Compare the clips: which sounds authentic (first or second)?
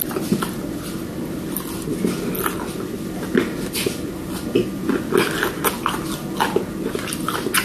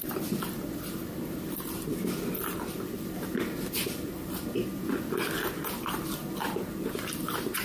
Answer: first